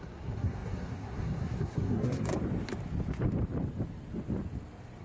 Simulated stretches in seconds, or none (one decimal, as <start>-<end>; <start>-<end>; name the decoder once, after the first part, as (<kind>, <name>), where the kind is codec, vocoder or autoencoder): 0.0-2.3 (codec, SNAC)